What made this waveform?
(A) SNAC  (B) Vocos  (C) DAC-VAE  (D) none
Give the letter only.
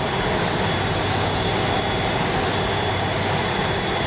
D